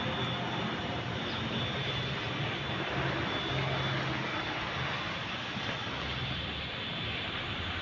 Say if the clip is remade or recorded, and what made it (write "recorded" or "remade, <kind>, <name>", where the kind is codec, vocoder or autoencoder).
recorded